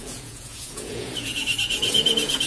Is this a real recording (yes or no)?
no